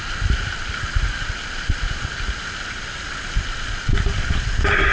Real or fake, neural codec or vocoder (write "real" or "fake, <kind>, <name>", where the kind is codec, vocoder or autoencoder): real